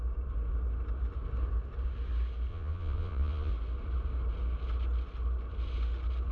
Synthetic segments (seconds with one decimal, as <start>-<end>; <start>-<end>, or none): 2.5-3.5

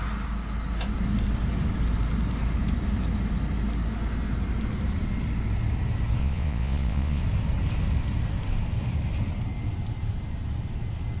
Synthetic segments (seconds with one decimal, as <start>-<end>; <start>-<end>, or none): 6.2-7.2